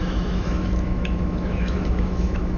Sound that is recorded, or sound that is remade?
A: remade